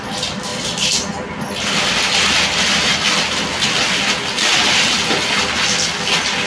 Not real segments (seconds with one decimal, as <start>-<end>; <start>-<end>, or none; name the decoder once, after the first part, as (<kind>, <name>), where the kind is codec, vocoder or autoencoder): none